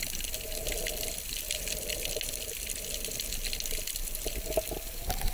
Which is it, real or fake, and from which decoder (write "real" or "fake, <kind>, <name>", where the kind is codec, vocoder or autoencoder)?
real